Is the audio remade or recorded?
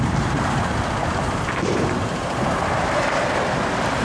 remade